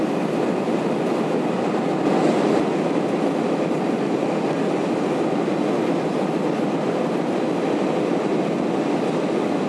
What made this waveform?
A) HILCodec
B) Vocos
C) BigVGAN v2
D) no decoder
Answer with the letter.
D